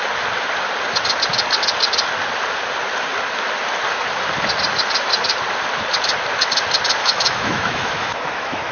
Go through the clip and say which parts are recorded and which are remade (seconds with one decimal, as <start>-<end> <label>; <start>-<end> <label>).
0.0-7.0 recorded; 7.0-8.7 remade